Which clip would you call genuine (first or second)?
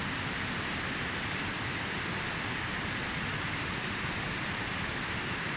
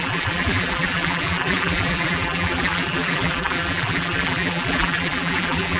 first